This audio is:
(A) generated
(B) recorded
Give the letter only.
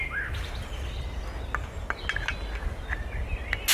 B